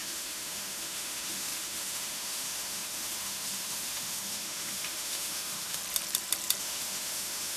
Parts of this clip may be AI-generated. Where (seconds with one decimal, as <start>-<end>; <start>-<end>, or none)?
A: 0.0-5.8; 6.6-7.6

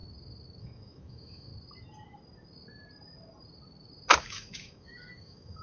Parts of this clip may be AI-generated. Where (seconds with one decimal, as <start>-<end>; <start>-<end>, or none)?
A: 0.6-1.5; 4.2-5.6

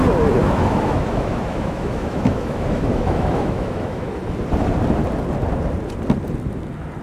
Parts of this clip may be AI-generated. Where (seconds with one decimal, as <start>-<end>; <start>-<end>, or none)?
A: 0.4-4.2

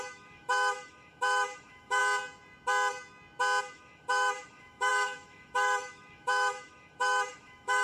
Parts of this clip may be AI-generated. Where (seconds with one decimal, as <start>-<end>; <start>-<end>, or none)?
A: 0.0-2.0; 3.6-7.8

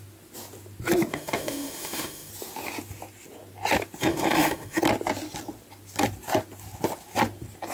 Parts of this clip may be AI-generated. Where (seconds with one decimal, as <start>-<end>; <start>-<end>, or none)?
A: 1.1-2.3; 4.0-4.8